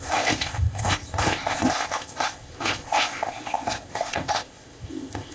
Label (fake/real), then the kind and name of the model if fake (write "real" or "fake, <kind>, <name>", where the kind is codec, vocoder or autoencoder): fake, codec, ZipCodec